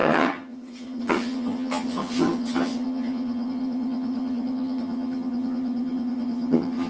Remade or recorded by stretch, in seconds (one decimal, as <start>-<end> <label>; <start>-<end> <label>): 0.0-6.9 remade